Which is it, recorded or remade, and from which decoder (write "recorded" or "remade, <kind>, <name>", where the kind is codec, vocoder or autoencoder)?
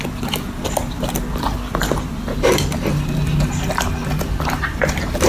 recorded